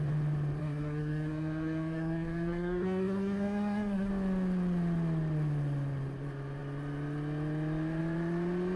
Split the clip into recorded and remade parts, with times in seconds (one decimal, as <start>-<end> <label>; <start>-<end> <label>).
0.0-0.6 recorded; 0.6-4.1 remade; 4.1-8.8 recorded